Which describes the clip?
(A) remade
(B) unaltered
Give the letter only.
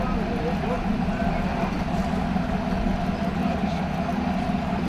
B